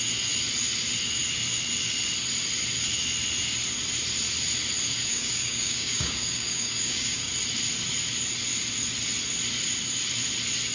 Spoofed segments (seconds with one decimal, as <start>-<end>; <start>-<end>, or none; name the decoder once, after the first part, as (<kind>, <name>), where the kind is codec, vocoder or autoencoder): 5.1-7.3 (codec, DAC)